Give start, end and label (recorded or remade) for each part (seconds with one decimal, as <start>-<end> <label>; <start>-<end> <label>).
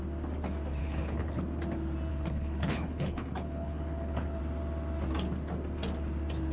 0.0-0.8 recorded; 0.8-1.4 remade; 1.4-2.1 recorded; 2.1-4.4 remade; 4.4-6.5 recorded